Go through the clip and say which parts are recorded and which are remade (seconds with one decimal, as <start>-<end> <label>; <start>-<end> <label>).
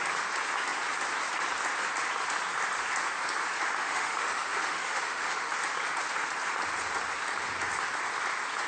0.0-3.8 recorded; 3.8-5.5 remade; 5.5-8.7 recorded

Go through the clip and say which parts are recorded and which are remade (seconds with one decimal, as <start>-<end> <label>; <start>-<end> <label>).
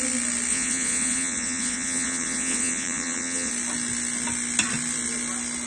0.0-0.5 recorded; 0.5-3.5 remade; 3.5-5.7 recorded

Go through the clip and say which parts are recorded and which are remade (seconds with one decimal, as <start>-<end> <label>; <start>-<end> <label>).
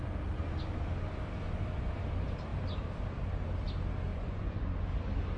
0.0-4.1 recorded; 4.1-4.7 remade; 4.7-5.4 recorded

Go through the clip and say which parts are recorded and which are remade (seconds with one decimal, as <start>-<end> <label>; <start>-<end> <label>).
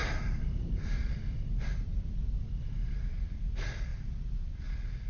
0.0-1.1 remade; 1.1-1.8 recorded; 1.8-2.5 remade; 2.5-3.9 recorded; 3.9-4.5 remade; 4.5-5.1 recorded